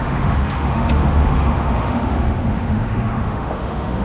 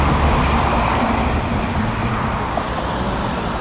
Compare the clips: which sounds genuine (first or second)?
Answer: second